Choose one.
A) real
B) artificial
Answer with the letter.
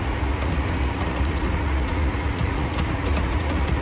B